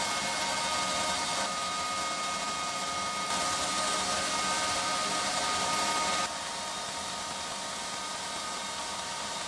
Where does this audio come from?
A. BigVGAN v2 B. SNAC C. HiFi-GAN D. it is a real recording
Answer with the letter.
D